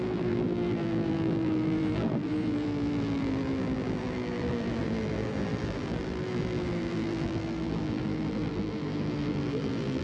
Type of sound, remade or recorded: remade